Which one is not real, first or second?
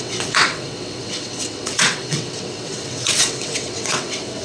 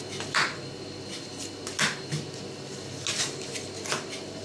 first